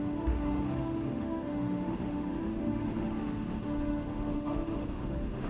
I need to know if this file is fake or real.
fake